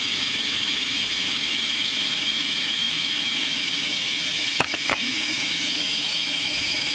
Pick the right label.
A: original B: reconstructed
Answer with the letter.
B